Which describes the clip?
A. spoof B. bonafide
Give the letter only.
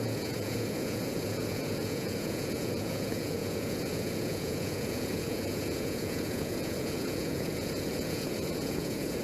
A